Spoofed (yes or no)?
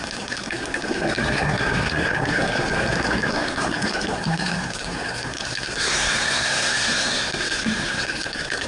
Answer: yes